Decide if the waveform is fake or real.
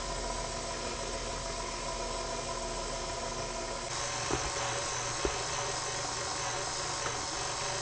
real